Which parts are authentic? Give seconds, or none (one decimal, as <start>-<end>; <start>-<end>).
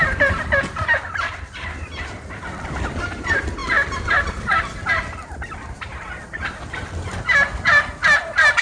0.0-8.6